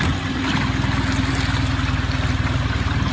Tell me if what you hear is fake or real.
real